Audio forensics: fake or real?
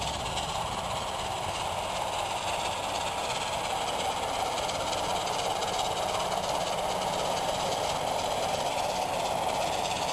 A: real